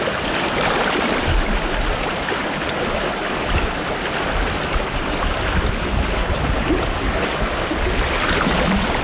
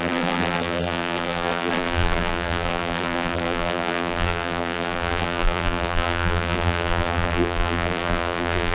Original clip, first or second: first